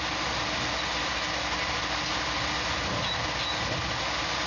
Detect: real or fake real